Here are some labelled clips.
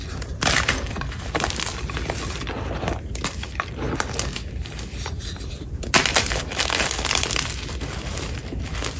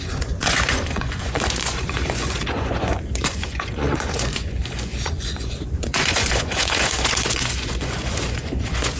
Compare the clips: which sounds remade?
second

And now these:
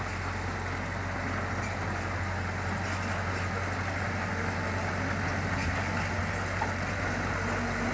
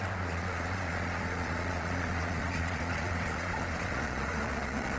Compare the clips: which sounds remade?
second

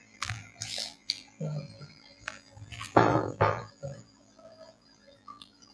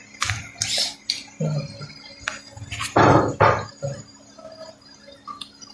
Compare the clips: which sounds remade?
first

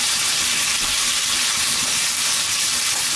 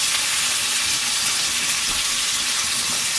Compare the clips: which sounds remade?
first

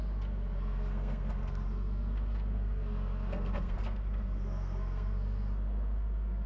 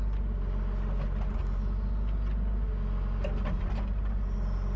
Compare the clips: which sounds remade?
first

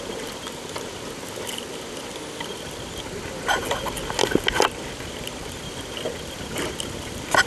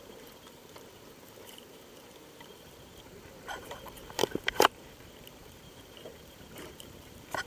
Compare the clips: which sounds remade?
second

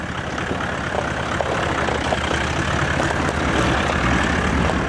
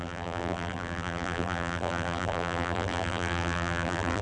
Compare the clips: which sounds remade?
second